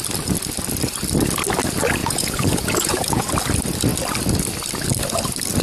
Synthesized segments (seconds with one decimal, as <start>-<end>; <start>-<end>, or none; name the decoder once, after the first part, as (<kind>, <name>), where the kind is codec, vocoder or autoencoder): 2.0-3.3 (vocoder, Vocos)